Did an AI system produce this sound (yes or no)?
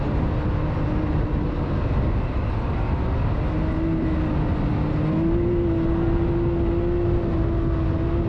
no